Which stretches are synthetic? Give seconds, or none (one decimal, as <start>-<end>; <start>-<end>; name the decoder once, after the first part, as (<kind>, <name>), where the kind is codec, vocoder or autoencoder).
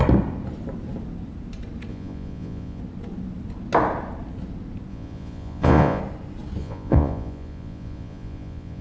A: 1.9-2.8 (vocoder, Vocos); 4.9-6.0; 6.6-8.8